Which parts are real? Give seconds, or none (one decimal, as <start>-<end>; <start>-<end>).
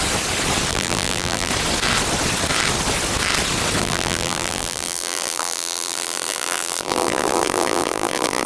0.0-0.7; 1.5-3.8